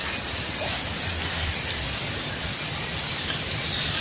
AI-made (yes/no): no